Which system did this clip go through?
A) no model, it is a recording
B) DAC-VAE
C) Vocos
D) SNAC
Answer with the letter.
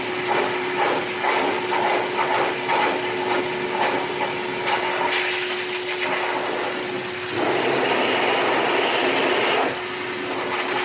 A